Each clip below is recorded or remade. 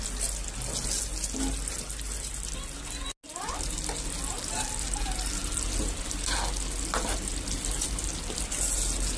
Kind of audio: recorded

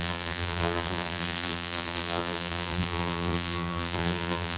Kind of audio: remade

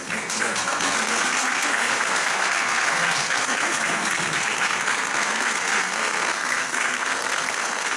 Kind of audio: remade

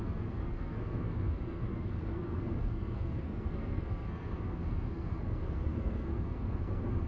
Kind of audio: remade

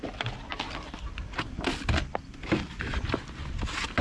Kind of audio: recorded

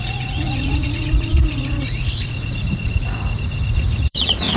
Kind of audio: remade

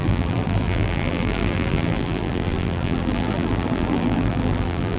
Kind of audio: remade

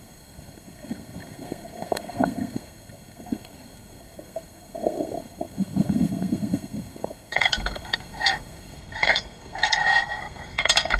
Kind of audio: remade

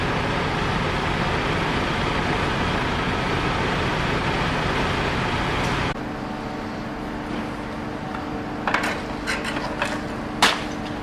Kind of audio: recorded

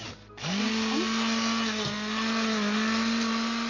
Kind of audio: recorded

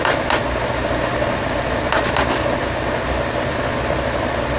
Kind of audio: recorded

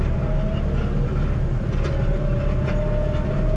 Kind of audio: recorded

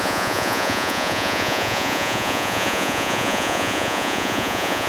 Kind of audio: remade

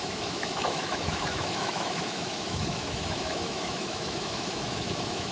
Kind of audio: remade